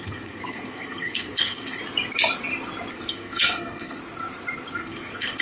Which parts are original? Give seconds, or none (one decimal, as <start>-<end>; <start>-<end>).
1.8-2.9; 4.0-4.7